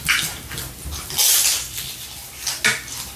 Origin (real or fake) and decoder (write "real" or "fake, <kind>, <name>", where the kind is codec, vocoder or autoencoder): real